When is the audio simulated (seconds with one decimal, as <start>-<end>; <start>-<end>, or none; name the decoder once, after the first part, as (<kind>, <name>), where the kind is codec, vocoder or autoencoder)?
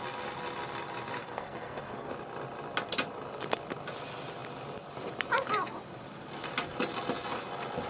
1.2-2.1 (codec, SNAC)